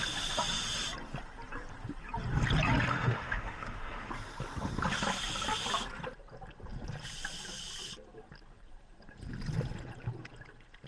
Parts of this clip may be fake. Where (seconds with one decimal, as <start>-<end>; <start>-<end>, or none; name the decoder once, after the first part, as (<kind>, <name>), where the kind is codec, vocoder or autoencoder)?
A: 2.9-4.1 (autoencoder, DAC-VAE)

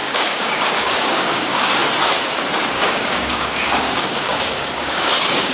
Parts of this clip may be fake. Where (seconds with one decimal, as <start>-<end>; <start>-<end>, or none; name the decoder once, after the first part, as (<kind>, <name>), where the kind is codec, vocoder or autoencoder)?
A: 0.0-1.8 (codec, DAC); 2.7-5.5

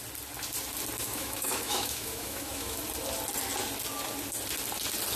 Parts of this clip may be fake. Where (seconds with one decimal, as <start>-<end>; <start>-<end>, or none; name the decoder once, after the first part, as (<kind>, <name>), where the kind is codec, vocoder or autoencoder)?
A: 1.0-2.8 (autoencoder, DAC-VAE)

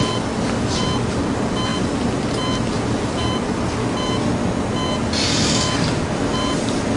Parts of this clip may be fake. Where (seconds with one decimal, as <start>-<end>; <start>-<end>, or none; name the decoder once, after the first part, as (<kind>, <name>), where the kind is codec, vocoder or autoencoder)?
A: none

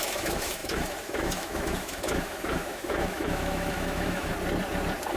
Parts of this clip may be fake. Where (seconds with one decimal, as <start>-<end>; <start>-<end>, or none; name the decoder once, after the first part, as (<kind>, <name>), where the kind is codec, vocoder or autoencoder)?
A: 0.0-4.3 (autoencoder, DAC-VAE)